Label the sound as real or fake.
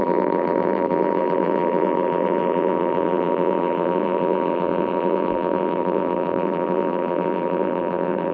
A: fake